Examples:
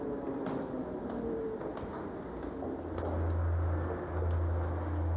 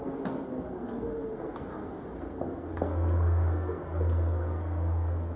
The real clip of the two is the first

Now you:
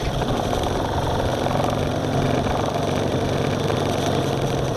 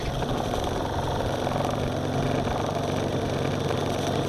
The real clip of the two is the second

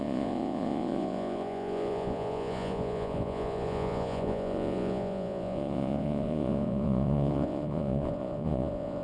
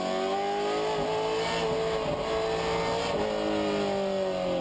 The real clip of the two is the second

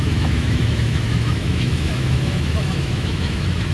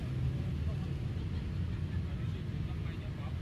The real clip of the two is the second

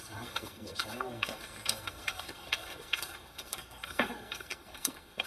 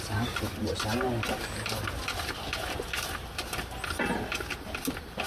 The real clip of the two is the second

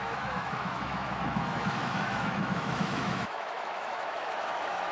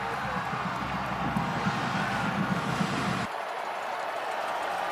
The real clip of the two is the second